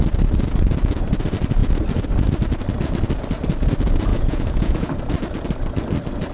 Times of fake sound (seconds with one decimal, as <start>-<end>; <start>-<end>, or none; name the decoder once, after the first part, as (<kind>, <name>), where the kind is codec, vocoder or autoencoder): 4.1-4.9 (vocoder, Vocos)